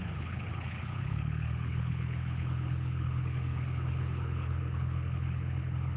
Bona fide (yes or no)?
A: no